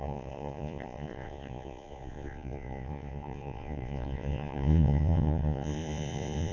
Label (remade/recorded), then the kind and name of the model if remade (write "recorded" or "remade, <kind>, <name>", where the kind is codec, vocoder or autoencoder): remade, vocoder, Vocos